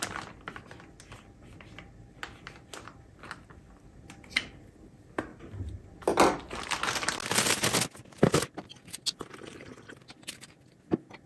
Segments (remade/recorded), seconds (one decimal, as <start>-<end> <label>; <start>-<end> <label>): 0.0-11.3 recorded